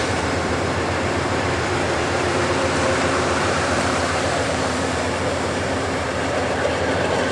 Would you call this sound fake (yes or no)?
yes